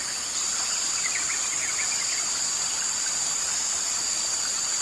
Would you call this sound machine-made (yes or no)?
no